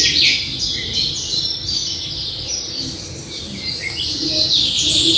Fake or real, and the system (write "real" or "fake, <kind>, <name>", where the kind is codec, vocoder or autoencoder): real